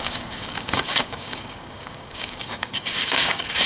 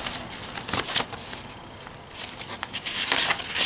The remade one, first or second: first